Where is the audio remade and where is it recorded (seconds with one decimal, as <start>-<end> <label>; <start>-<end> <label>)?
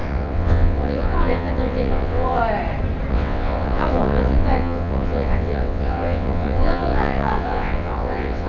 0.0-2.4 remade; 2.4-3.1 recorded; 3.1-8.5 remade